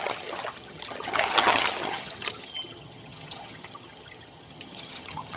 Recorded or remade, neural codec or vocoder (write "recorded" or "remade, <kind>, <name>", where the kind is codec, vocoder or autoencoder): remade, vocoder, HiFi-GAN